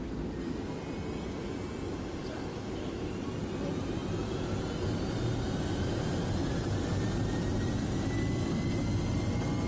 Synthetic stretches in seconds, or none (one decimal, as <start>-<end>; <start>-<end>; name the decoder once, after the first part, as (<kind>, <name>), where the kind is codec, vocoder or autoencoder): 2.5-3.1 (autoencoder, DAC-VAE)